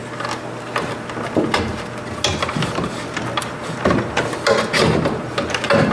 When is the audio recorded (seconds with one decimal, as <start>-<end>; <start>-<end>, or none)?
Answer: 0.0-2.3; 3.2-5.9